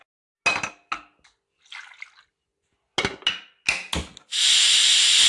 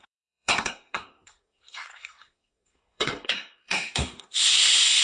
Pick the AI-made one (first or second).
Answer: second